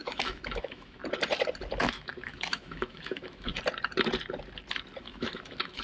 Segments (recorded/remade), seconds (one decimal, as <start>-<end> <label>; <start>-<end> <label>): 0.0-1.0 remade; 1.0-1.8 recorded; 1.8-3.5 remade; 3.5-5.0 recorded; 5.0-5.8 remade